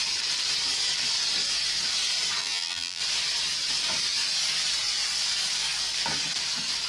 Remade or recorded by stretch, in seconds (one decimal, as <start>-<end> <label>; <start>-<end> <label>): 0.0-2.4 recorded; 2.4-3.0 remade; 3.0-6.9 recorded